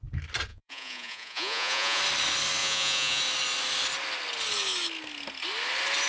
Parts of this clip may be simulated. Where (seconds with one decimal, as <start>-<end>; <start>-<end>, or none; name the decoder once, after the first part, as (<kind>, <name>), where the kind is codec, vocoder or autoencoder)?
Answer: 0.5-2.0 (vocoder, Vocos); 2.6-3.2